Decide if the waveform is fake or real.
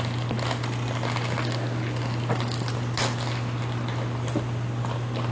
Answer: real